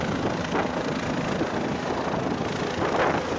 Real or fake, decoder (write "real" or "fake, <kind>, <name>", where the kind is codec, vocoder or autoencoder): real